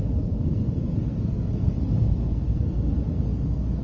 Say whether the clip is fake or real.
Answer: fake